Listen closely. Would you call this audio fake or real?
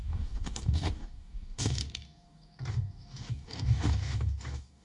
fake